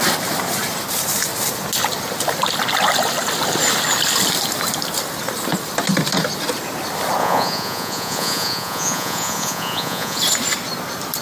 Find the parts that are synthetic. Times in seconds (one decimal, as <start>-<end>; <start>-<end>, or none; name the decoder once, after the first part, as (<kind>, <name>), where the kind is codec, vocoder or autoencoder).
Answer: 7.2-10.2 (vocoder, Vocos)